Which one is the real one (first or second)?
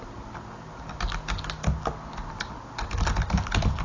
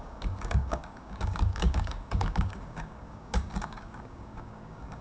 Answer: first